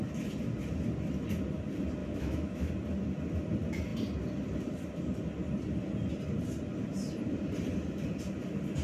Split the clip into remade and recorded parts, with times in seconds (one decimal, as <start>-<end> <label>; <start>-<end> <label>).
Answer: 0.0-2.0 recorded; 2.0-2.7 remade; 2.7-8.8 recorded